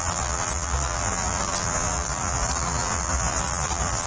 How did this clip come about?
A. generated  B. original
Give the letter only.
A